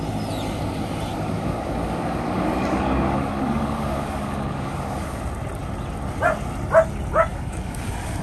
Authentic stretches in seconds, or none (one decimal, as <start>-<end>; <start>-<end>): 0.0-1.1; 5.2-7.3